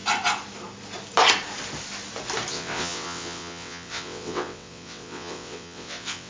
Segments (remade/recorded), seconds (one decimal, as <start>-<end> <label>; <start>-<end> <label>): 0.0-2.5 recorded; 2.5-6.3 remade